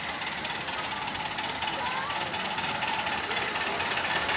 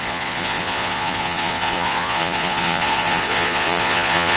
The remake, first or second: second